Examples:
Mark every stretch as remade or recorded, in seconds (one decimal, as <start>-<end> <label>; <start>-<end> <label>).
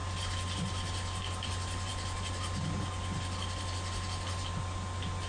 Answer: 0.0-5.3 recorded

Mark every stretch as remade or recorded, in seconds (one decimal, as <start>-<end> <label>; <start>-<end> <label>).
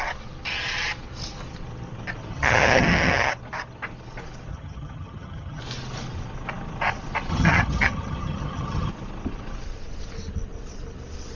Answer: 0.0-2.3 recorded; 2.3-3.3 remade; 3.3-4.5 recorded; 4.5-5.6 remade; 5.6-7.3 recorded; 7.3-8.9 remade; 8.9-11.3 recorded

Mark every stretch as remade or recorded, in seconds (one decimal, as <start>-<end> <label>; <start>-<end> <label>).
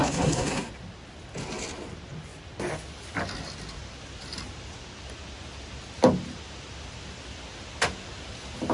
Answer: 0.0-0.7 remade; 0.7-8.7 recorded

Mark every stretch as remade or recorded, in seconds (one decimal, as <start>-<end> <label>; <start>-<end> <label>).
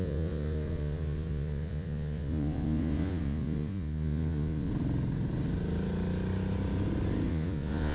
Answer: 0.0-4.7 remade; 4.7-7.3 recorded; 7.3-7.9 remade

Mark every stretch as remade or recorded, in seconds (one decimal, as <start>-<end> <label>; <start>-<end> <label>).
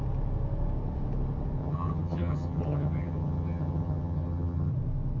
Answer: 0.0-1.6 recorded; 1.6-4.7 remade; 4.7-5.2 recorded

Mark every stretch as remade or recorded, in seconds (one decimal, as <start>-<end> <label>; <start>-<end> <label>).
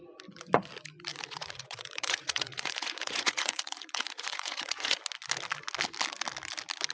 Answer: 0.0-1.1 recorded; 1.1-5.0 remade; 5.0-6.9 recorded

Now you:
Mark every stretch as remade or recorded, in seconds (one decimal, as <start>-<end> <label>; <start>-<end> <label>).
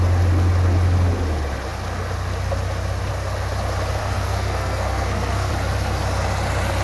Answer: 0.0-4.0 recorded; 4.0-5.5 remade; 5.5-6.8 recorded